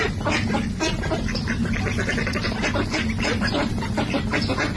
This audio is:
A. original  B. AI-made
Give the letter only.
A